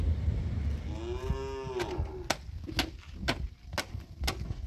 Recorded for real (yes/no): yes